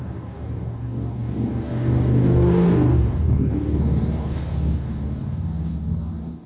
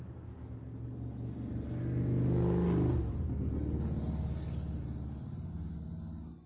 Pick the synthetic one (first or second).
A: first